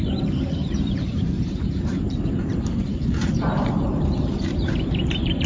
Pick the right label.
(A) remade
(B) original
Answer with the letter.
A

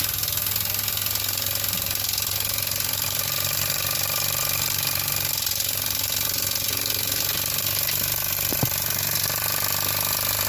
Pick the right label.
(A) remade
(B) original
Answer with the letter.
B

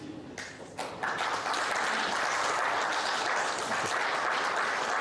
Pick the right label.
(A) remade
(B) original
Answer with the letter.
B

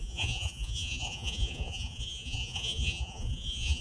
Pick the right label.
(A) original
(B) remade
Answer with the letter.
B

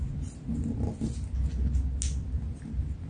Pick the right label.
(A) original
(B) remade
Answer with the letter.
A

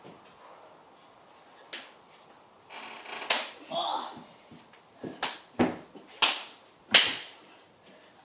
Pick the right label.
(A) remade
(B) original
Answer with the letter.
B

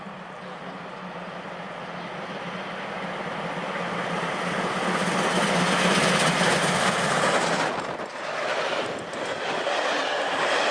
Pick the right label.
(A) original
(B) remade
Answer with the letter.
A